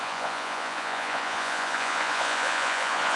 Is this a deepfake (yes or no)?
yes